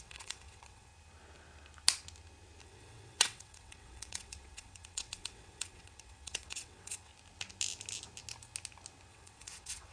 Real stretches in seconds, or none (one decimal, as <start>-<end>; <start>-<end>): 0.9-2.6; 7.1-9.1

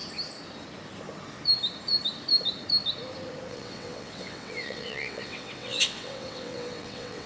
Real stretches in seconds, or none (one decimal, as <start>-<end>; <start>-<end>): 0.0-3.5

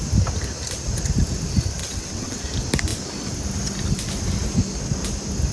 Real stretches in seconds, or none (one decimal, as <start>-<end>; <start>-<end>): 0.0-1.8; 2.4-5.5

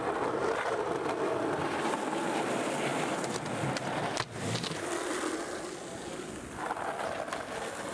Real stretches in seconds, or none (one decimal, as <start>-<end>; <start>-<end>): 0.0-7.9